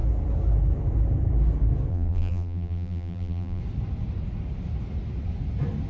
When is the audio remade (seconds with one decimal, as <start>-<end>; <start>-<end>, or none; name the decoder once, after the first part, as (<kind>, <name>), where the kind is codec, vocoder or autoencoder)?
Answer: 1.9-3.6 (vocoder, BigVGAN v2)